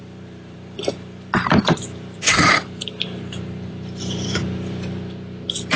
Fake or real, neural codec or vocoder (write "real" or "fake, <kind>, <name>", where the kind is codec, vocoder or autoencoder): fake, vocoder, BigVGAN v2